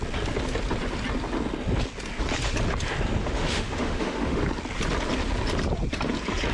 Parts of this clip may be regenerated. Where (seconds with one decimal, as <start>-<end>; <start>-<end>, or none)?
3.2-4.4